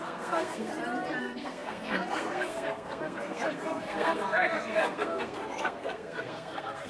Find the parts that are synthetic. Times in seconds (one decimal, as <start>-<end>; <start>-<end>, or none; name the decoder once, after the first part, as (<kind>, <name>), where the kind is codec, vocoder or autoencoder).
0.0-0.7 (codec, SNAC); 1.2-6.9